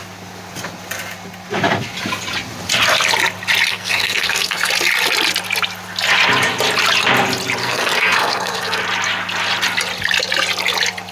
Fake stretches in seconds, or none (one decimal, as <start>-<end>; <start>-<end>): 3.7-4.7; 7.6-8.8